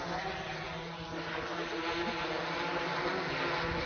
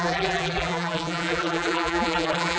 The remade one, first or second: second